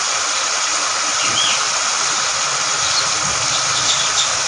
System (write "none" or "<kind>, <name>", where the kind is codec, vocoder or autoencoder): none